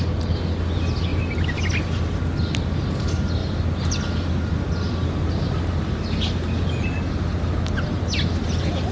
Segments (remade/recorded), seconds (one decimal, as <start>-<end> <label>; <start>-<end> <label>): 0.0-8.9 recorded